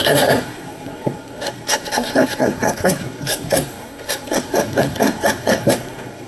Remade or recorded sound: remade